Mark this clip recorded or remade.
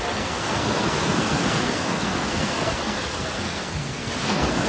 remade